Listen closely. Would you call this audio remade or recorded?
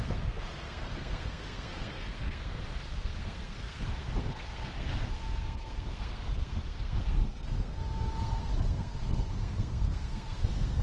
remade